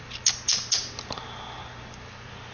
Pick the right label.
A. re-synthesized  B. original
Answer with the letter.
B